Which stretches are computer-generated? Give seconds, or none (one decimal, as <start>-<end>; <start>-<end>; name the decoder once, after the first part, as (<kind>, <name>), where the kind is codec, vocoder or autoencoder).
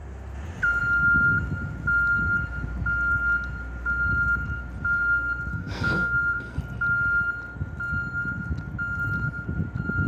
5.5-6.6 (codec, SNAC)